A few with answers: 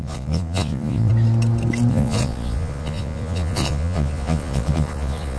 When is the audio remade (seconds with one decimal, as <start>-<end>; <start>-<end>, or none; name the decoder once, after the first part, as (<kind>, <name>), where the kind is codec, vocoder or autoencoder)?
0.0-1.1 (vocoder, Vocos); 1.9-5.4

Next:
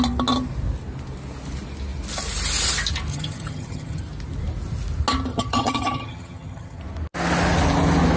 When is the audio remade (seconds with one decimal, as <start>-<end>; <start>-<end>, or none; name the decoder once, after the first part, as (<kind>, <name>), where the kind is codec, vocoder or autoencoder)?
3.1-4.0 (vocoder, HiFi-GAN); 5.3-6.8

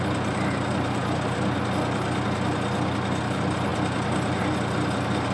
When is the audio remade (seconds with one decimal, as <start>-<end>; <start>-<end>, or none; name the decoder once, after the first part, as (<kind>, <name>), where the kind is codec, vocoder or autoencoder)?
none

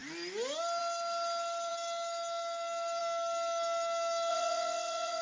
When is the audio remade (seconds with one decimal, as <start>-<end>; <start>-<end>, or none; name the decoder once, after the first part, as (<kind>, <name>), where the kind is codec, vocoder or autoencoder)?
4.3-5.2 (vocoder, Vocos)

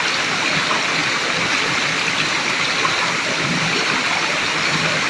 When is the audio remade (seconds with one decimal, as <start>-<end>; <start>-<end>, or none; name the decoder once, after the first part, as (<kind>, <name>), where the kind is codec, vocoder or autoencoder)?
none